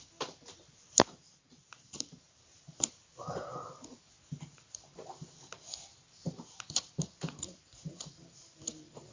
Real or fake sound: fake